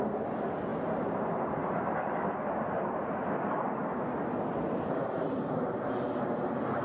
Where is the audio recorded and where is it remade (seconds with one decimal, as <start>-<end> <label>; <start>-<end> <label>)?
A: 0.0-6.8 recorded